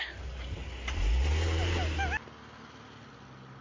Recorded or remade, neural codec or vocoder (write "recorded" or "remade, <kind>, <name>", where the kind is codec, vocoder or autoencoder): recorded